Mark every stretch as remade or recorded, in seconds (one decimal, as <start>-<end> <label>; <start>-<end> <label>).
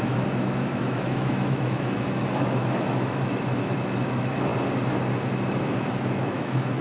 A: 0.0-4.5 remade; 4.5-5.6 recorded; 5.6-6.8 remade